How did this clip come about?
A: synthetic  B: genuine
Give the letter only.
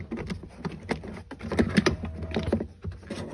B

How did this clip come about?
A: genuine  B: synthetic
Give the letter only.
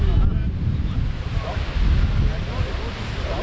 A